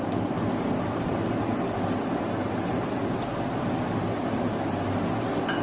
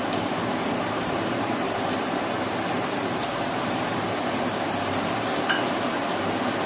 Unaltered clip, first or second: first